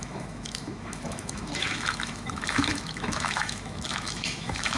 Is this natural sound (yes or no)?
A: no